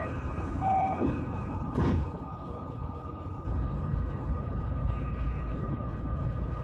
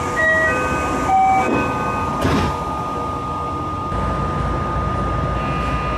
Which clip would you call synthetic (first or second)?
first